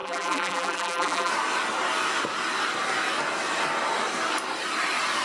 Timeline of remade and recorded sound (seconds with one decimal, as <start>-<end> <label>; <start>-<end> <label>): 0.0-1.3 remade; 1.3-5.2 recorded